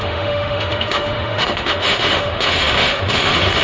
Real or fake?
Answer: fake